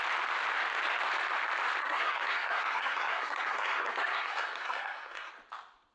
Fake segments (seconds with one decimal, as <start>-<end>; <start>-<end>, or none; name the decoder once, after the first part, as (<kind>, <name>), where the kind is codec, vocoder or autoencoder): 1.8-5.3 (codec, SNAC)